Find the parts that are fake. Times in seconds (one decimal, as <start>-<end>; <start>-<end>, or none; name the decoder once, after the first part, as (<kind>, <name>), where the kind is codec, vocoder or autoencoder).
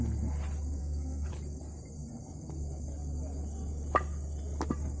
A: 0.8-1.3 (codec, SNAC)